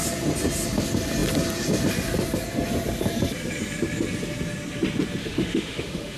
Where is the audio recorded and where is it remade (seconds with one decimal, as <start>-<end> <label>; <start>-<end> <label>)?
0.0-5.2 recorded; 5.2-6.2 remade